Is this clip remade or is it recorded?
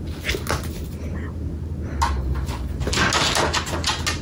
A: recorded